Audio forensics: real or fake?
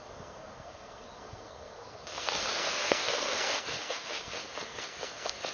fake